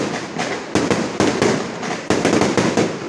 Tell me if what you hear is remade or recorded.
recorded